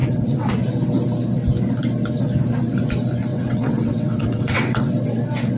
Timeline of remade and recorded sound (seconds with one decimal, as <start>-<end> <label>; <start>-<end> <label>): 0.0-0.5 remade; 0.5-3.3 recorded; 3.3-4.9 remade; 4.9-5.6 recorded